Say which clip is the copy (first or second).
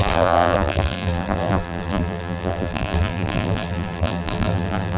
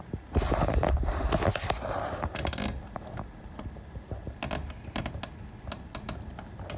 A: first